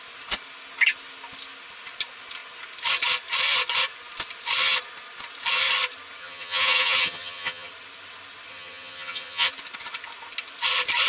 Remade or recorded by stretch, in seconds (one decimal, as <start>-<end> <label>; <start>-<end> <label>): 0.0-6.2 recorded; 6.2-7.7 remade; 7.7-8.5 recorded; 8.5-9.5 remade; 9.5-11.1 recorded